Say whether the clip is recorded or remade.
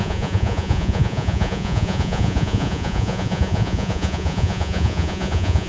remade